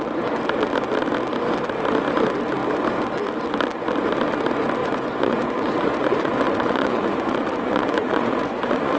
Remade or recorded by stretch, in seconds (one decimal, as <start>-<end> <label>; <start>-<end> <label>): 0.0-4.8 recorded; 4.8-9.0 remade